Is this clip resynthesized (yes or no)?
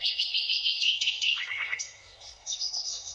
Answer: yes